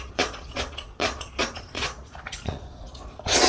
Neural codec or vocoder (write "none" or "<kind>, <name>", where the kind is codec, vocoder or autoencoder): vocoder, Vocos